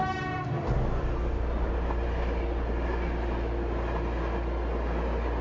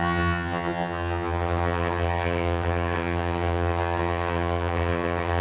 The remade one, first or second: second